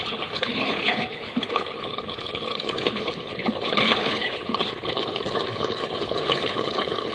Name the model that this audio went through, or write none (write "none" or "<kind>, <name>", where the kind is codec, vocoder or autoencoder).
codec, HILCodec